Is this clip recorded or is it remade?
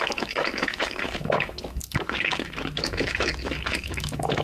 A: remade